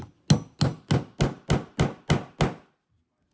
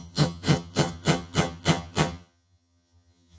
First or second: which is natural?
first